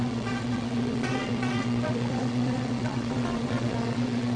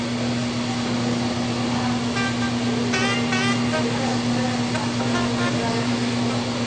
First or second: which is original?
second